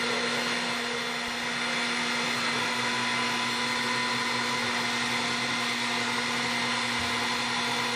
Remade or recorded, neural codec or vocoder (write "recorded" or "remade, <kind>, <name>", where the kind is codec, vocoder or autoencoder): recorded